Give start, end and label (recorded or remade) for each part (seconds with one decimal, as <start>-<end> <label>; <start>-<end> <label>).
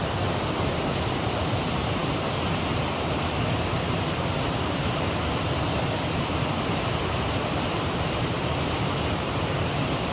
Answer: 0.0-2.0 remade; 2.0-2.6 recorded; 2.6-10.1 remade